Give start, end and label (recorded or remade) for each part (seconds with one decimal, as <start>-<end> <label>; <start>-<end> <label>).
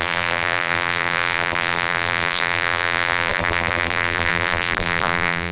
0.0-5.5 remade